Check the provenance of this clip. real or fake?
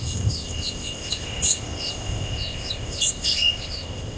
fake